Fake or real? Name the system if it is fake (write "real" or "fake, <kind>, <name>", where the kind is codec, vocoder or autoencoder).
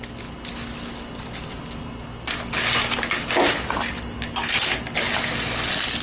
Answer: real